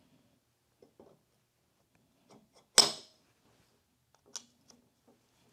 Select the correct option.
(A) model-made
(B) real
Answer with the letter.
B